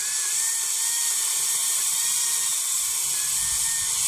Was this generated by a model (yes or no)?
no